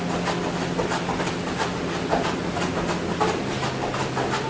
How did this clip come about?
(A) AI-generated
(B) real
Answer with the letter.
B